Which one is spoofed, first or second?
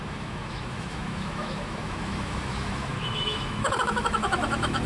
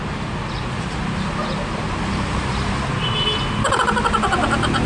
first